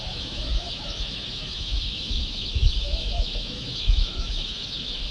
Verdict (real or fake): fake